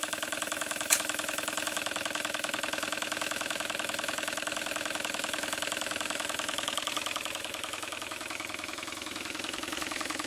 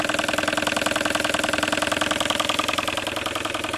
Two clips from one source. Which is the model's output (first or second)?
first